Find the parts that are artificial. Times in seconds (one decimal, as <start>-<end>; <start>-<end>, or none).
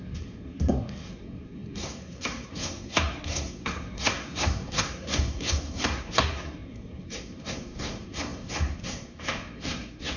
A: 0.0-10.2